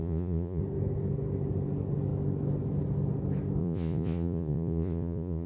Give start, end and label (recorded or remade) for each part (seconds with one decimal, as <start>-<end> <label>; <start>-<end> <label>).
0.0-0.6 remade; 0.6-3.6 recorded; 3.6-5.5 remade